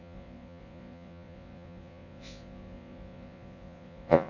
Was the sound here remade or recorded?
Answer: remade